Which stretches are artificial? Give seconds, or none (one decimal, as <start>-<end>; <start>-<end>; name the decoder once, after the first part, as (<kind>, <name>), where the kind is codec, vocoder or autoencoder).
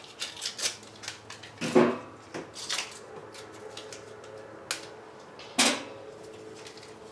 none